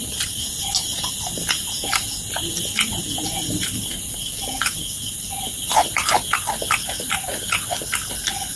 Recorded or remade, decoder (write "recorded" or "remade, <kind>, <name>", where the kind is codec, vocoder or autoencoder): recorded